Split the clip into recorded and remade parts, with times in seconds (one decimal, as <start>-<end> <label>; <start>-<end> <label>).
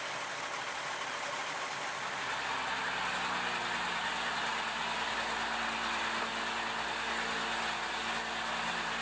0.0-9.0 recorded